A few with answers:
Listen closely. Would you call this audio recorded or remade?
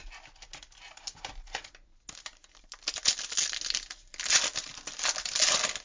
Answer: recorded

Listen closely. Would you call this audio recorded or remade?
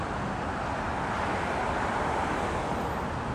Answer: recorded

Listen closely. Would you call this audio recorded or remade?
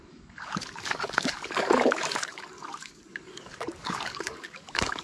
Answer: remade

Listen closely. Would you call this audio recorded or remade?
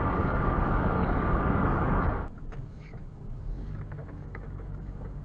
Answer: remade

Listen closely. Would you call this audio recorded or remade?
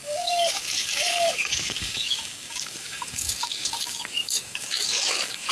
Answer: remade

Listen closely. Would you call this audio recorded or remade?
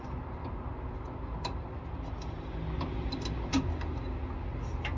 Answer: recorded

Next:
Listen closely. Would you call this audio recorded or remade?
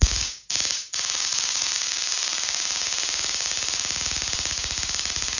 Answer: remade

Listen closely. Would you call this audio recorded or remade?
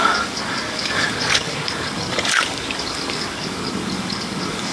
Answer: remade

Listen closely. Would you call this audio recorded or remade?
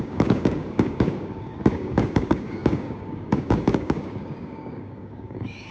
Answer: remade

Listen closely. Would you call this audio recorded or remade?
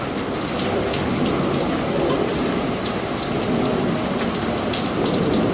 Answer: recorded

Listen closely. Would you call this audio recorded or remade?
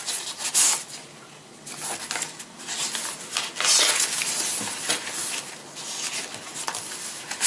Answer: recorded